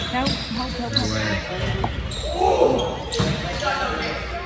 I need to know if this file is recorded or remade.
recorded